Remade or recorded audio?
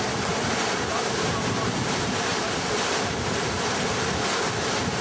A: recorded